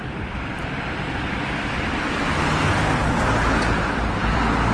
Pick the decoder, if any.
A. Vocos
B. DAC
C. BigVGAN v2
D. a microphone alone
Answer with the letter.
D